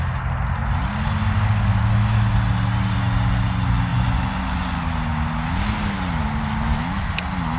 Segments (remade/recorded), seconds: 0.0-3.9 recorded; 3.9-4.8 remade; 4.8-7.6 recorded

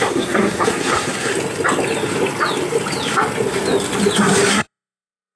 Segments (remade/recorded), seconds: 0.0-1.3 remade; 1.3-4.5 recorded; 4.5-5.4 remade

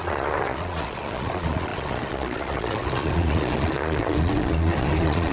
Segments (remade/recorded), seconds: 0.0-5.3 remade

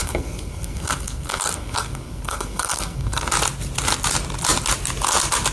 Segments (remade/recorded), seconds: 0.0-3.3 remade; 3.3-5.5 recorded

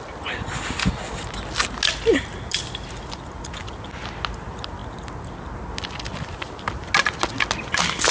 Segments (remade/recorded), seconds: 0.0-8.1 recorded

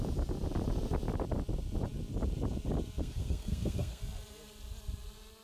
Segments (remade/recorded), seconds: 0.0-3.0 recorded; 3.0-4.0 remade; 4.0-5.4 recorded

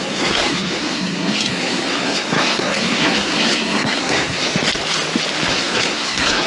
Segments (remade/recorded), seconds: 0.0-4.5 remade; 4.5-5.5 recorded; 5.5-6.5 remade

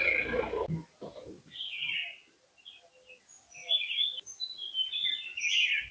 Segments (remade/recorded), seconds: 0.0-5.9 recorded